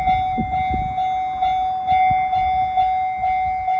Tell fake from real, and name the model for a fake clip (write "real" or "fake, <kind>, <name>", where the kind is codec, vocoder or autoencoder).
real